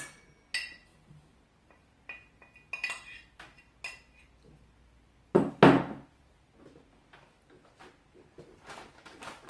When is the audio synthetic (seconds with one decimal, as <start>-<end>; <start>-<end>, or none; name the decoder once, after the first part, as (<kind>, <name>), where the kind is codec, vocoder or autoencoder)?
none